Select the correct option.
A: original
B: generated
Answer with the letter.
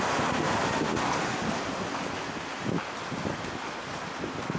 A